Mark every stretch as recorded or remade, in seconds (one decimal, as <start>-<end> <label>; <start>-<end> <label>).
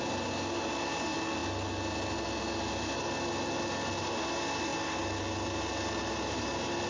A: 0.0-6.9 recorded